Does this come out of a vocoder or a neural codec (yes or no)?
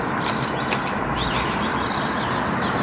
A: no